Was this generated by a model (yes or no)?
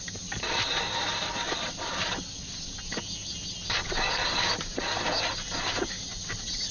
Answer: no